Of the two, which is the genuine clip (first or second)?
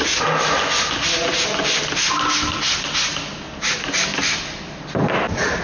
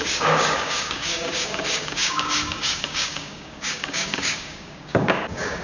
first